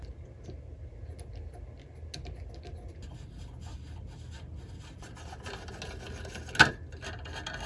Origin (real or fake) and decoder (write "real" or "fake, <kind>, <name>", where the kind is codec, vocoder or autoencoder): real